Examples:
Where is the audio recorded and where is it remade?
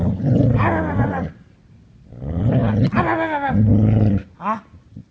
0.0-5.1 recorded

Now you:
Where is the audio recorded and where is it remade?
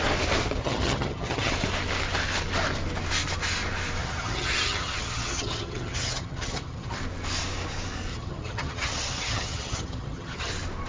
0.0-0.6 recorded; 0.6-1.5 remade; 1.5-4.0 recorded; 4.0-7.0 remade; 7.0-8.1 recorded; 8.1-10.5 remade; 10.5-10.9 recorded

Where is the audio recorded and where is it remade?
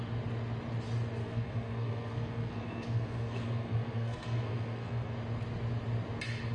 0.0-1.2 recorded; 1.2-5.1 remade; 5.1-6.5 recorded